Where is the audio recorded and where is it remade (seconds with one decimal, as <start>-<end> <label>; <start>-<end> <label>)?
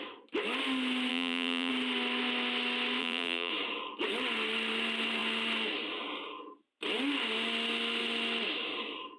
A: 0.0-1.1 recorded; 1.1-1.7 remade; 1.7-3.0 recorded; 3.0-3.5 remade; 3.5-9.2 recorded